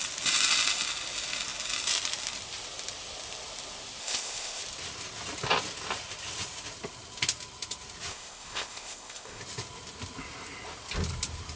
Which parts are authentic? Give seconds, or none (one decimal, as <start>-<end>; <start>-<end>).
0.0-4.0; 4.6-8.1; 9.4-11.6